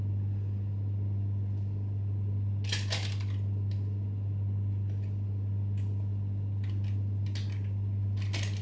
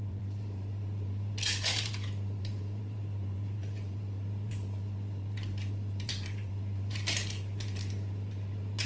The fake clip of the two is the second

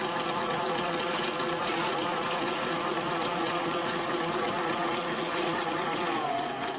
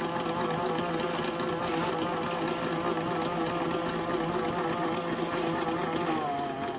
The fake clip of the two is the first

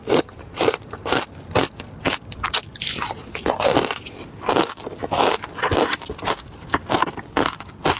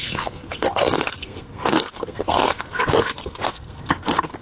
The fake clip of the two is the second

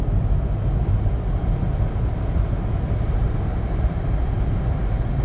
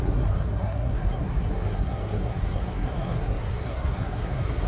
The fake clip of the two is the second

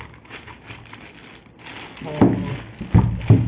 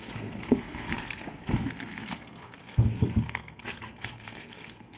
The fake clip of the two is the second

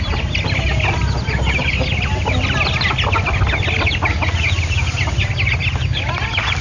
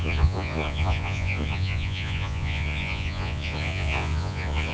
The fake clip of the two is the second